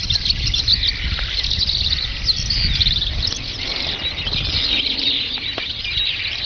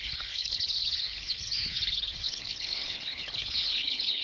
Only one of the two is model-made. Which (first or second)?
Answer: second